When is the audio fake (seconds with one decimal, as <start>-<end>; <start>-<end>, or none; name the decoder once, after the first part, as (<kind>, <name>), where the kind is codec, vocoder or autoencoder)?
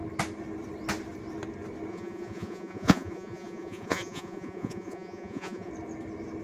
1.9-5.7 (vocoder, Vocos)